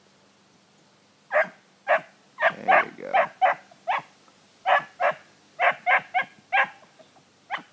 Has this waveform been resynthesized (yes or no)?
no